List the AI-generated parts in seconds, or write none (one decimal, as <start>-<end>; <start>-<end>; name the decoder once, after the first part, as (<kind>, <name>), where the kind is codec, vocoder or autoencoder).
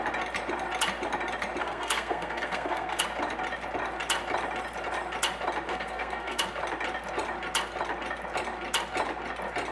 1.6-3.0 (codec, SNAC); 5.7-6.4